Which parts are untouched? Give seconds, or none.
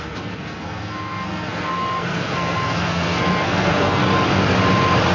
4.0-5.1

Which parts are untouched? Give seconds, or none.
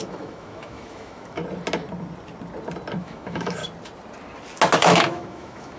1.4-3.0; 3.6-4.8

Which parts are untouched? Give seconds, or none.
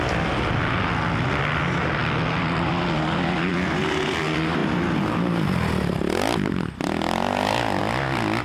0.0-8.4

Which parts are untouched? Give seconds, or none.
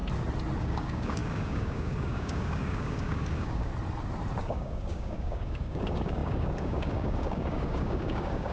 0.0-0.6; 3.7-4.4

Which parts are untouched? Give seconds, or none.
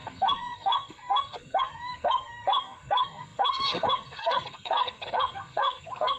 none